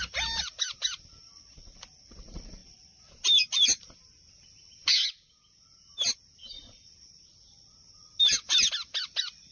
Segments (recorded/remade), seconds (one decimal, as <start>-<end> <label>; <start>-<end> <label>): 0.0-9.5 recorded